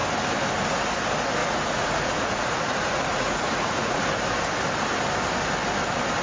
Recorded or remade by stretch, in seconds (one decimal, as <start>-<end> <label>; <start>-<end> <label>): 0.0-1.4 recorded; 1.4-4.0 remade; 4.0-6.2 recorded